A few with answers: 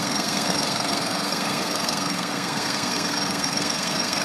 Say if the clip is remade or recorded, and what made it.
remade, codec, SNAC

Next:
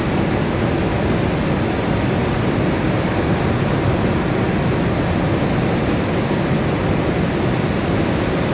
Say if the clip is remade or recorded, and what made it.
recorded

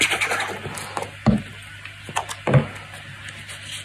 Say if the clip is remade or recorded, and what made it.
recorded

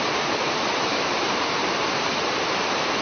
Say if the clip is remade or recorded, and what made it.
recorded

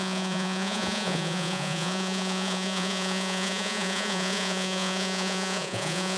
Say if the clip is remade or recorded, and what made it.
remade, vocoder, Vocos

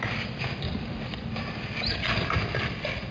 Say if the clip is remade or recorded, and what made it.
recorded